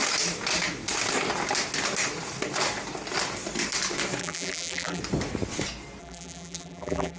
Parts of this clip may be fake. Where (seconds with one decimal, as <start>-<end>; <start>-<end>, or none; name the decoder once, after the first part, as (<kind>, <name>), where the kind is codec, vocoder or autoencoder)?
4.2-5.0 (vocoder, BigVGAN v2); 6.0-7.2